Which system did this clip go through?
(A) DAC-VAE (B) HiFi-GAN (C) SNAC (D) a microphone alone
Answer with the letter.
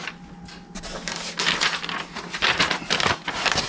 D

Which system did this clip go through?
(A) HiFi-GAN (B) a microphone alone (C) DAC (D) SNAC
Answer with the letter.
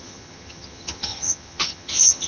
A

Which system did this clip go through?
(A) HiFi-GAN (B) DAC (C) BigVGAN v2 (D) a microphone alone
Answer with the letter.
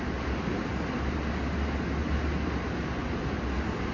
D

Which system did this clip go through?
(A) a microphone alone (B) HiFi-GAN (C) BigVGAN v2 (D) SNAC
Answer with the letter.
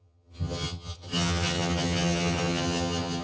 B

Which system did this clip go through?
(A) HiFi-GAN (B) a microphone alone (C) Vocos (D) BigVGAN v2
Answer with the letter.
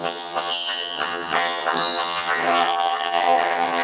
A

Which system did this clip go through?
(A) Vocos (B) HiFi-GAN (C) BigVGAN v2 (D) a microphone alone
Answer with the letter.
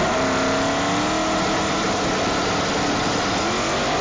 D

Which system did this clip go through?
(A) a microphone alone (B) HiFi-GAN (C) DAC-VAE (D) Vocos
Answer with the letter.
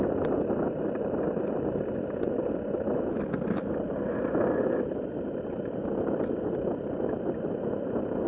A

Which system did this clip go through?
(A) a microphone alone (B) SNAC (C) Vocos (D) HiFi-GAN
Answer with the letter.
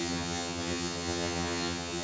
D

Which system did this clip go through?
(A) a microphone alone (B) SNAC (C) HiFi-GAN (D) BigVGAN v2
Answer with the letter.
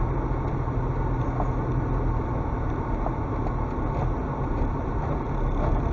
A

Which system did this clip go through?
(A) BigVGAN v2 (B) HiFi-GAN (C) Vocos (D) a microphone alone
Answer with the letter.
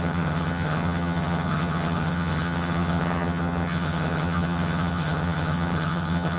B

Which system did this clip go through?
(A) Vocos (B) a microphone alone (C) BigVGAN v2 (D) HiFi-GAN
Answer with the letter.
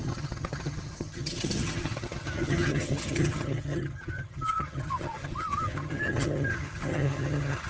D